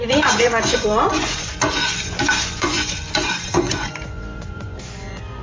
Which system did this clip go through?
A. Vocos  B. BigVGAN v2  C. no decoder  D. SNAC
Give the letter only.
A